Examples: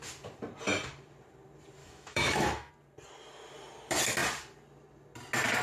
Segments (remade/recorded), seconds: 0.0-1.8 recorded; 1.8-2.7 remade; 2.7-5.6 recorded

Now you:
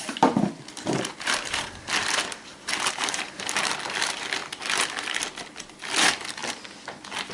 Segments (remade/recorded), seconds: 0.0-4.4 remade; 4.4-6.0 recorded; 6.0-6.4 remade; 6.4-7.3 recorded

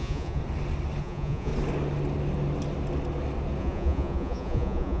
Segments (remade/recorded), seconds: 0.0-0.4 remade; 0.4-1.0 recorded; 1.0-1.5 remade; 1.5-3.6 recorded; 3.6-5.0 remade

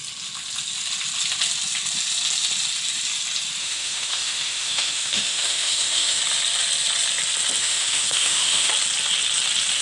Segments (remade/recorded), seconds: 0.0-3.6 recorded; 3.6-6.2 remade; 6.2-7.6 recorded; 7.6-8.7 remade; 8.7-9.8 recorded

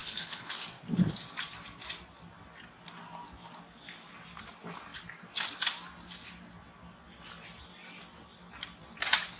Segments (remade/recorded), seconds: 0.0-0.5 remade; 0.5-9.4 recorded